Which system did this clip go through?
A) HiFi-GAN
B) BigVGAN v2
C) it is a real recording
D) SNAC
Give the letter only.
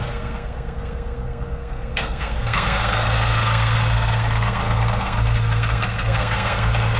D